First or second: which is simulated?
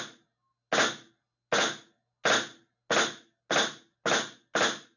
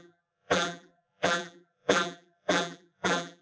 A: second